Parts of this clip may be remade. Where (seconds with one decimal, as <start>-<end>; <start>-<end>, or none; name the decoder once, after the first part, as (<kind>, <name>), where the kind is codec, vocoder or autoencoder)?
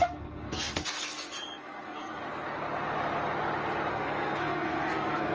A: 0.0-2.2 (codec, SNAC); 3.9-5.3